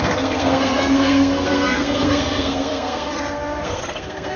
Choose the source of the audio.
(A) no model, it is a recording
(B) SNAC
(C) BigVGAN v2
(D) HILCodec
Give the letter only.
B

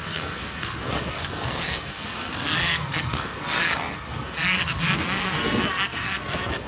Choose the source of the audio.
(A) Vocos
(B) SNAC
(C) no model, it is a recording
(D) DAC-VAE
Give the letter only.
B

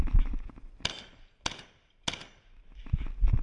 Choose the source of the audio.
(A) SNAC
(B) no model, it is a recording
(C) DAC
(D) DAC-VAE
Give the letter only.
B